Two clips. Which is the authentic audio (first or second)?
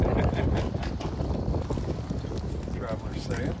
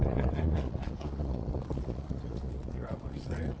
first